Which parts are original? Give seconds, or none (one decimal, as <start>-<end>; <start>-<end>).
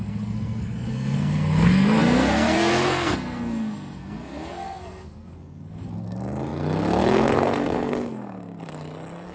none